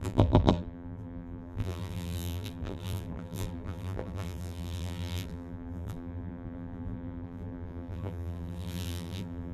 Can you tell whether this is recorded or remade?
remade